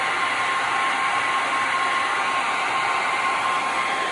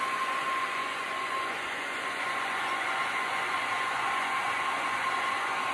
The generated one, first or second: second